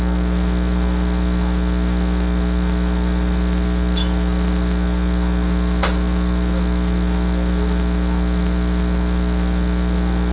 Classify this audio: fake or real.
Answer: real